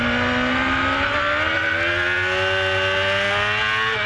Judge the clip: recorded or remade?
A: recorded